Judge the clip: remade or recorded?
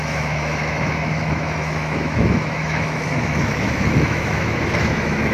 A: remade